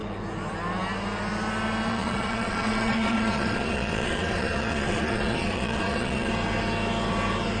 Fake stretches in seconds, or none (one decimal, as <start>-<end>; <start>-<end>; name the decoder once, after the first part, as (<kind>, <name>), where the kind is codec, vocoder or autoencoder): 1.9-6.3 (vocoder, Vocos)